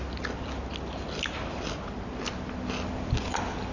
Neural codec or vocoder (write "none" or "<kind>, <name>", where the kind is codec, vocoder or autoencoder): none